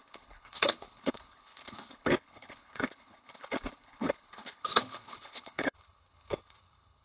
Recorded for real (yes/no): no